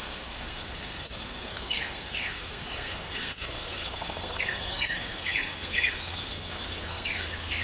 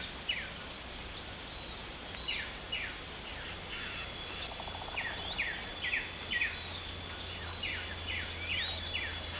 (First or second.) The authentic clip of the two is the second